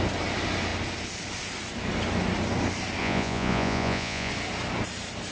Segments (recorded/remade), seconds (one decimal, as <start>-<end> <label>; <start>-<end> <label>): 0.0-3.0 recorded; 3.0-4.3 remade; 4.3-5.3 recorded